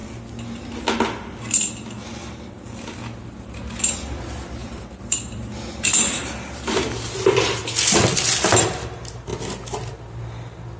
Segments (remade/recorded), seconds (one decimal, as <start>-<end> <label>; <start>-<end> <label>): 0.0-4.6 recorded; 4.6-7.6 remade; 7.6-10.8 recorded